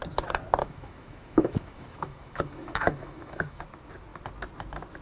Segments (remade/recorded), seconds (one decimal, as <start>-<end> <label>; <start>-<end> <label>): 0.0-0.6 recorded; 0.6-3.6 remade; 3.6-5.0 recorded